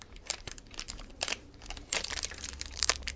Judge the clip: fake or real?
fake